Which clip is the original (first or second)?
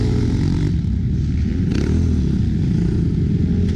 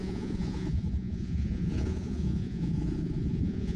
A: first